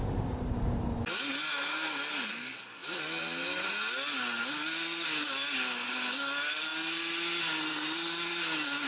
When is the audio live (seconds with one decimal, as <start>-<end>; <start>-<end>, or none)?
0.0-8.9